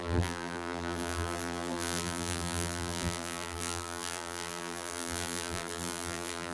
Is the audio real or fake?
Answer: fake